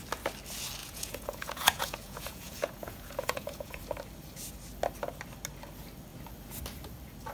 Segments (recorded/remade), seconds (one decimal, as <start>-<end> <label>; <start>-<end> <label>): 0.0-0.8 recorded; 0.8-3.8 remade; 3.8-7.3 recorded